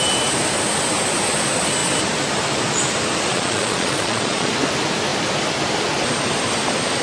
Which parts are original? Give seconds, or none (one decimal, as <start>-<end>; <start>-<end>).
0.0-3.3; 4.5-7.0